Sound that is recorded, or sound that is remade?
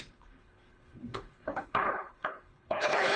remade